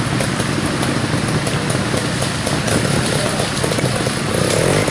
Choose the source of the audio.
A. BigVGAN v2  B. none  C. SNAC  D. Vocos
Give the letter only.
B